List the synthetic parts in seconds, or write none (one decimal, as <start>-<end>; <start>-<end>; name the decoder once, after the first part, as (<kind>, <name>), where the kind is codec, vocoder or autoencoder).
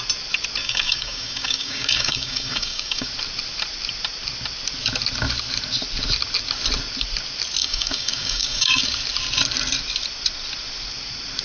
0.6-3.1 (codec, DAC); 7.6-8.8